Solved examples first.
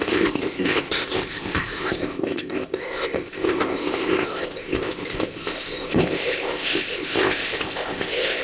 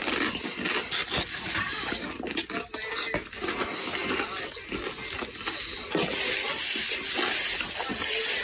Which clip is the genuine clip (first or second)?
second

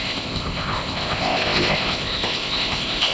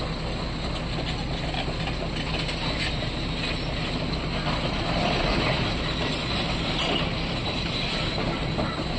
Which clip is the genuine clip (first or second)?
second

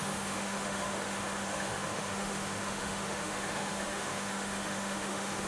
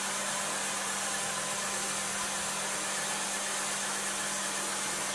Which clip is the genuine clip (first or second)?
second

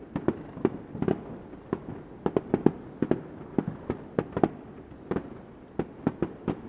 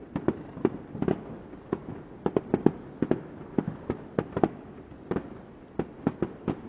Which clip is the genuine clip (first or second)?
first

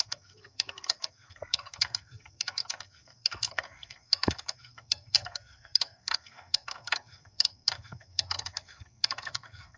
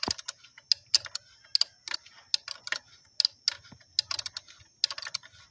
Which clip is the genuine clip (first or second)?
second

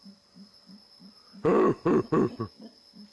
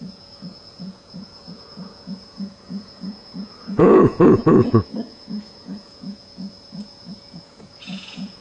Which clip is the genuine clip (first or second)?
first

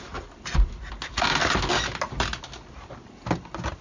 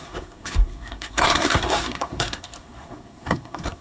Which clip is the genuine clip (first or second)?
first